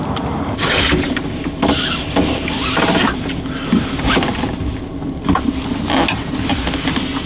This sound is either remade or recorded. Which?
recorded